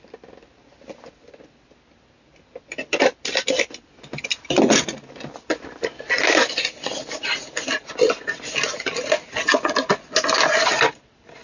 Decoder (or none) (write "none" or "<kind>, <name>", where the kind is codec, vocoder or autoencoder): none